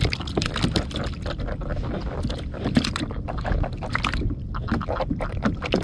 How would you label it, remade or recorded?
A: recorded